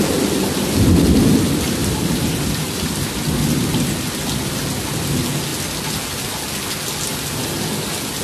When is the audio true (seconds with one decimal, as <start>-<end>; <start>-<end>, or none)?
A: 0.0-1.8; 4.5-8.2